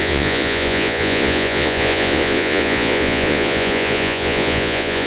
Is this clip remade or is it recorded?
remade